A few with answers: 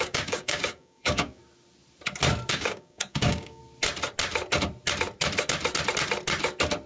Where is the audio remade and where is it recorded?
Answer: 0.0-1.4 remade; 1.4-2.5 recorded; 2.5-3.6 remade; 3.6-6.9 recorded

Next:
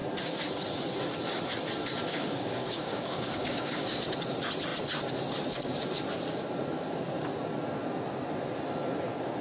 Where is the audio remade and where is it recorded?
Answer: 0.0-2.1 recorded; 2.1-4.1 remade; 4.1-9.4 recorded

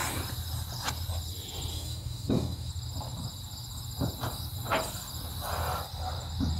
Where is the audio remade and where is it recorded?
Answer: 0.0-1.7 recorded; 1.7-2.7 remade; 2.7-6.6 recorded